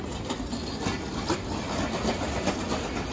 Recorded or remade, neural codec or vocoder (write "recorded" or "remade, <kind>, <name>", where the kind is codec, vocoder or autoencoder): recorded